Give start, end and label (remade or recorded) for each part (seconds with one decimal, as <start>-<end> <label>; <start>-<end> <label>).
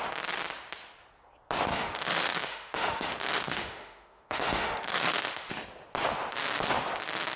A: 0.0-1.7 recorded; 1.7-5.5 remade; 5.5-7.4 recorded